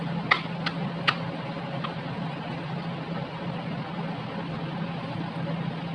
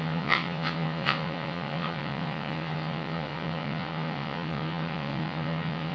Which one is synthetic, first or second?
second